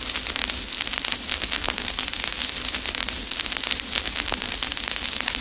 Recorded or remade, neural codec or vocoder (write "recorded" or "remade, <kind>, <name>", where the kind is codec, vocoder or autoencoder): recorded